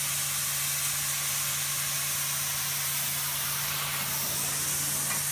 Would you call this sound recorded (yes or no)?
yes